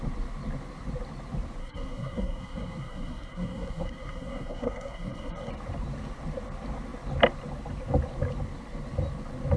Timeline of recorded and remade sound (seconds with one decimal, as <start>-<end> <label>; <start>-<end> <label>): 0.0-1.6 recorded; 1.6-5.5 remade; 5.5-9.6 recorded